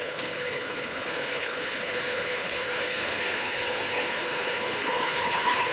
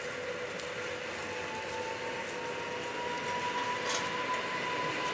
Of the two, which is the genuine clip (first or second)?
second